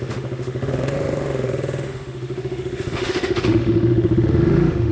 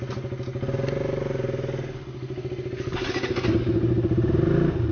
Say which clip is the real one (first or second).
second